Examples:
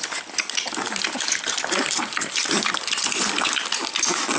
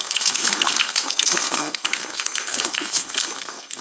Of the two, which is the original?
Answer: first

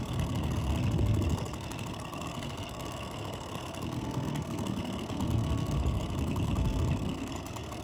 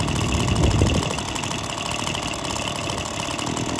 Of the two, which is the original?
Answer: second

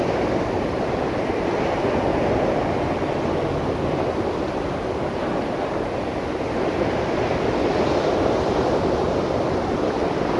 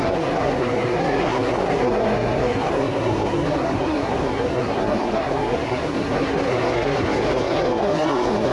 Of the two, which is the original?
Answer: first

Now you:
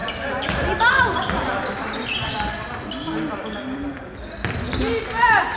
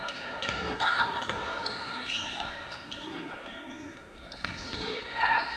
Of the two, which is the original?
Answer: first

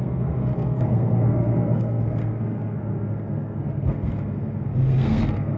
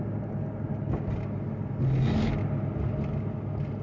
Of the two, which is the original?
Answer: second